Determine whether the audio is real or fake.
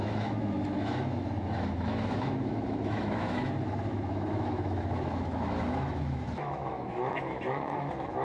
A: fake